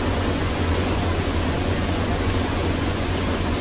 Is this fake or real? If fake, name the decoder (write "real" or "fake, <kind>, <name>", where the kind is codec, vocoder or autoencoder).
fake, vocoder, Vocos